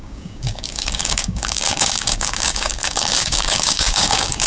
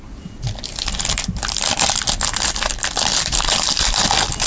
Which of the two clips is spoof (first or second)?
first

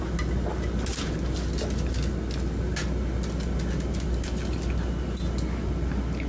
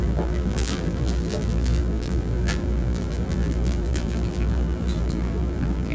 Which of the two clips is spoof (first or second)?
second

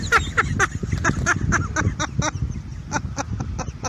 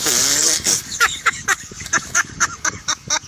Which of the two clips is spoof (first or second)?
second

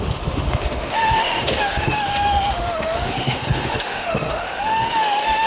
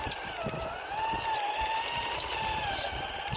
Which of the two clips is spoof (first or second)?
first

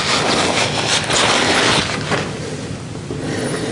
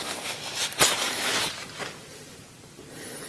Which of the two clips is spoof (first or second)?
second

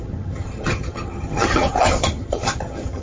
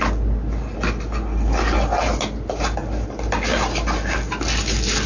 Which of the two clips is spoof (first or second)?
first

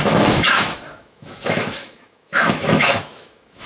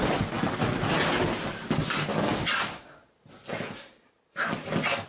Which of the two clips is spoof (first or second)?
first